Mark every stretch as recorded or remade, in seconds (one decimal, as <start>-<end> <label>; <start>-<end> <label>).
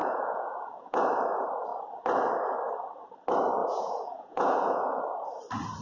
0.0-1.0 remade; 1.0-3.6 recorded; 3.6-5.0 remade; 5.0-5.8 recorded